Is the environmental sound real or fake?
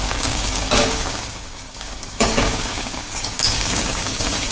fake